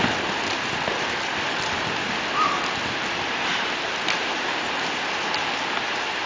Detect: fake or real real